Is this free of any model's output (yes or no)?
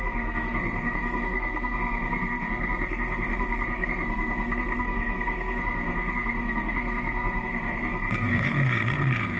no